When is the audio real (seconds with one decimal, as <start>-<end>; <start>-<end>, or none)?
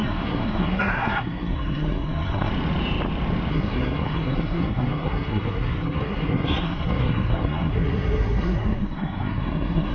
2.5-3.5